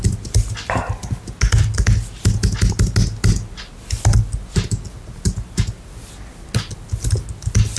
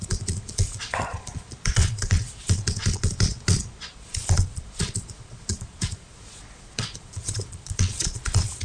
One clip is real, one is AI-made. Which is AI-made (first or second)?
second